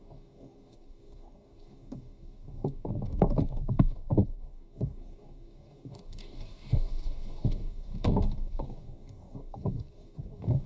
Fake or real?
fake